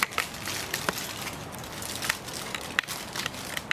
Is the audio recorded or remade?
recorded